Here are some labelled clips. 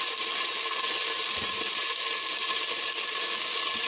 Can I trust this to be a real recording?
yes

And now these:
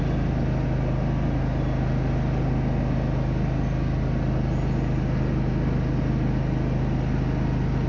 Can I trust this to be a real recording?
yes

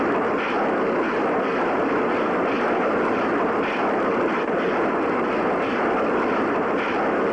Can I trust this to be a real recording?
yes